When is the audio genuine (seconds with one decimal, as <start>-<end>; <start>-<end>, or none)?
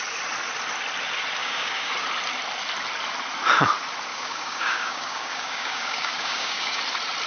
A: 0.0-1.4; 1.9-4.1; 6.8-7.3